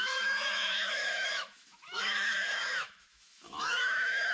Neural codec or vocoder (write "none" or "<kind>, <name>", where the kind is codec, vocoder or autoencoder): autoencoder, DAC-VAE